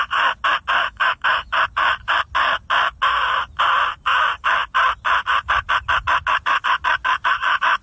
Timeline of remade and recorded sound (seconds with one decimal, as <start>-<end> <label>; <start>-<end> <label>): 0.0-0.8 recorded; 0.8-1.5 remade; 1.5-7.8 recorded